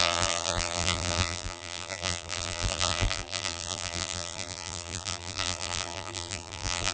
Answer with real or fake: fake